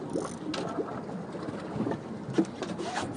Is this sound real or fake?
real